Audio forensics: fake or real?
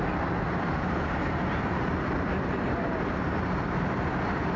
fake